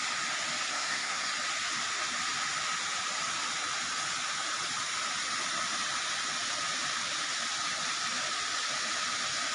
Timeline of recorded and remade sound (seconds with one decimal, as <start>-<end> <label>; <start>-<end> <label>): 0.0-0.7 recorded; 0.7-1.3 remade; 1.3-9.5 recorded